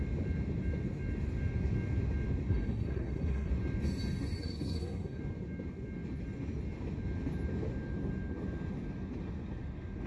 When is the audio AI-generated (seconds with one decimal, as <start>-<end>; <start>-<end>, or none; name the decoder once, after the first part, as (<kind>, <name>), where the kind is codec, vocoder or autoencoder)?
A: 2.5-3.5 (codec, SNAC); 4.4-5.2